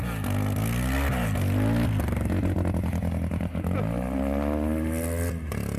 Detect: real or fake real